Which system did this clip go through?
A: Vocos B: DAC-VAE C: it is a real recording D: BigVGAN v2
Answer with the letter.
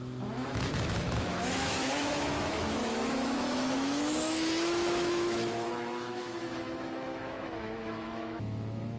B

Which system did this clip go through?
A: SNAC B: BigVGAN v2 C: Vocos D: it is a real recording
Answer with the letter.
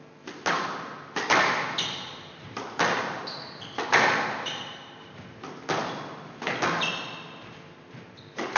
D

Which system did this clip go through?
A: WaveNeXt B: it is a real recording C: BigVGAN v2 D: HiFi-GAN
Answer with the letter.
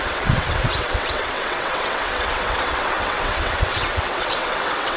A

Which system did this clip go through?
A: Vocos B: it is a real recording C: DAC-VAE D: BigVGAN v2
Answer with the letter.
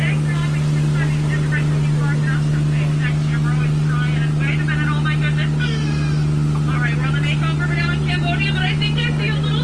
B